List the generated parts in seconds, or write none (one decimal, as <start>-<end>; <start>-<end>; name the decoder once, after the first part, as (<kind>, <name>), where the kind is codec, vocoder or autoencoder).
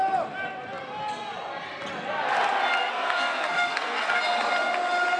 2.8-4.2 (codec, SNAC)